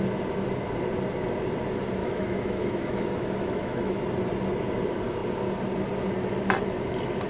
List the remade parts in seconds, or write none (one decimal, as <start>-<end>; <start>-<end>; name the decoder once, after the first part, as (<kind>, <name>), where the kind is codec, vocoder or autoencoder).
2.0-4.0 (autoencoder, DAC-VAE)